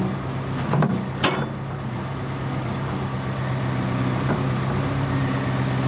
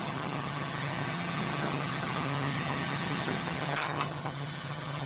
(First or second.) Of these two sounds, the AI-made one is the second